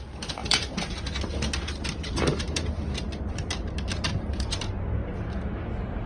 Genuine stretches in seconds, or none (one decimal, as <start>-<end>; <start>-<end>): 0.0-0.4; 1.0-2.0